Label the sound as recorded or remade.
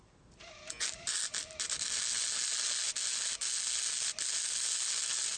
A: recorded